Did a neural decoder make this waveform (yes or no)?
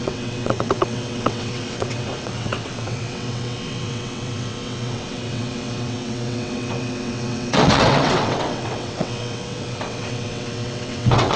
yes